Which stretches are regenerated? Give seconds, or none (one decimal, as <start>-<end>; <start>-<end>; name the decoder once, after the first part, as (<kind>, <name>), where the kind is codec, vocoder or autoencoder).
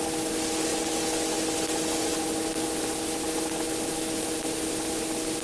none